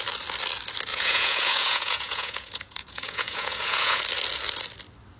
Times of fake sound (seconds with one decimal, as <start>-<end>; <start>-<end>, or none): 0.9-4.0